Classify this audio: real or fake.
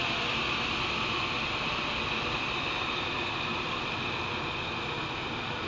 real